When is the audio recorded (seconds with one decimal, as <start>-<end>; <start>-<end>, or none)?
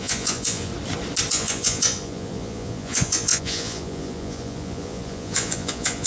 0.7-1.3